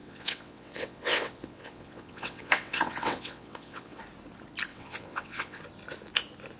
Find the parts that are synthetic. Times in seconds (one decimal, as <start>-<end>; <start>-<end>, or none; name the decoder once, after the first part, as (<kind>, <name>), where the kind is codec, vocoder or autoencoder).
0.0-4.0 (vocoder, WaveNeXt); 4.7-5.6